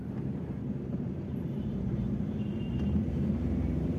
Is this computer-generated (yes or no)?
yes